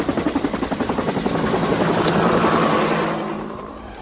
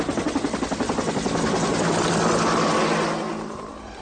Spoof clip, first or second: first